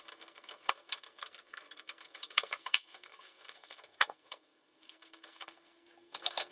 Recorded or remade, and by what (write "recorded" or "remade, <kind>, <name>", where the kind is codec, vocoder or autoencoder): remade, codec, SNAC